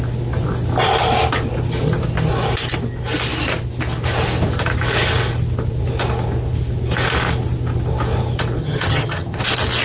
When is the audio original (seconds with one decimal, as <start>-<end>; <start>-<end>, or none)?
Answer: 0.0-8.6; 9.4-9.8

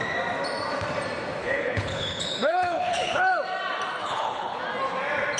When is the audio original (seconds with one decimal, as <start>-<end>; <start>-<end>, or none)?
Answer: 0.0-1.4; 3.3-4.0; 4.6-5.4

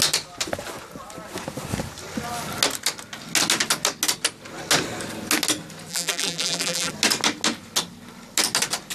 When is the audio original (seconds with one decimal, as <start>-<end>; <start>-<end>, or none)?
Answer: 0.0-5.9; 6.9-8.9

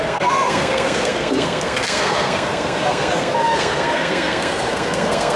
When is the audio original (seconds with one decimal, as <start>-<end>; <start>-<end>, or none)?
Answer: none

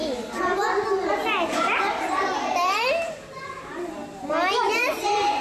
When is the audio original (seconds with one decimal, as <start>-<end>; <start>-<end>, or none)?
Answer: 0.0-1.5; 4.0-4.6

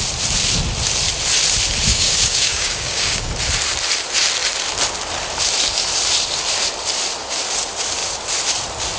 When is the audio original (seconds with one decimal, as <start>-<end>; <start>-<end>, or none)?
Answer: 0.0-1.9; 3.3-9.0

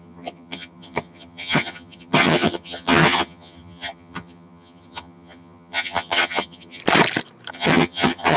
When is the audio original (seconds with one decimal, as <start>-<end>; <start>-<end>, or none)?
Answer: 6.8-7.5

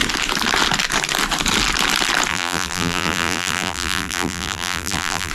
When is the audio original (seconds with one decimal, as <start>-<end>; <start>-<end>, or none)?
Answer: 0.0-2.3